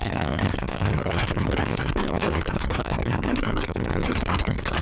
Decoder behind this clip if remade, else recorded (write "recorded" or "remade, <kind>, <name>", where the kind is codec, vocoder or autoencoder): remade, codec, SNAC